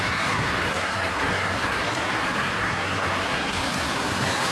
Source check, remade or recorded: remade